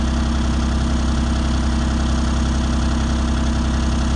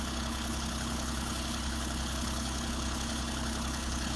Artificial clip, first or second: second